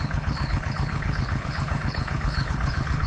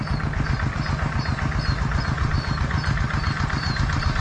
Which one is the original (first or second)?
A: second